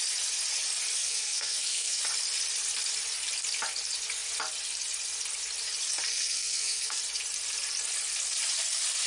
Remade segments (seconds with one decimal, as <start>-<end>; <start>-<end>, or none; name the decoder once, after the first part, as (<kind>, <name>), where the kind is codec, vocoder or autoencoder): 1.0-2.0 (codec, SNAC); 6.1-7.0